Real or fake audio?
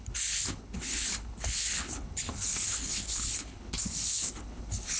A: fake